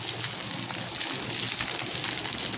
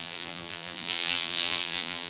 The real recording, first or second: first